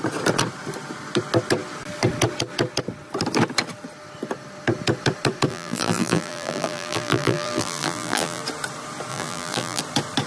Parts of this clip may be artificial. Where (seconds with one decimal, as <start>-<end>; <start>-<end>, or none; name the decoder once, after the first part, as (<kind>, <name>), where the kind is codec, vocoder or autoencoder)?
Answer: 5.5-8.4 (vocoder, BigVGAN v2); 9.1-9.8